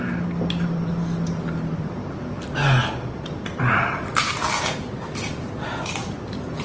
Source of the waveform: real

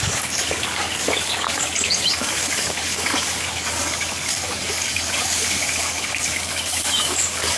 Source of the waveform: fake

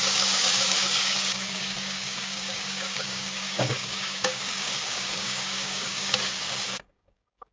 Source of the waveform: fake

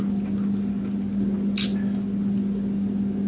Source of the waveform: real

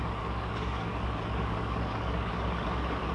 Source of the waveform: fake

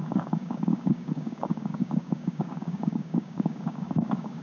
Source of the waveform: fake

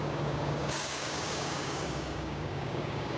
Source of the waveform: fake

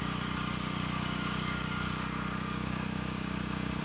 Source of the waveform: fake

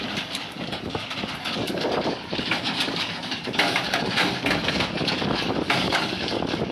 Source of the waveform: fake